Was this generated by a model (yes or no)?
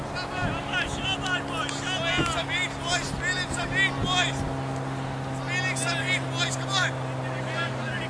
no